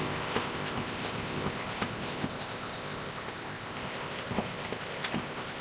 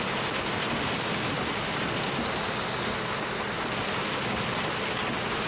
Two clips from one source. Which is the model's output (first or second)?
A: first